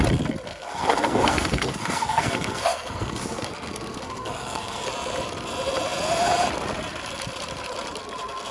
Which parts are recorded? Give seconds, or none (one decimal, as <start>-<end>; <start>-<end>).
0.0-0.5; 4.9-8.5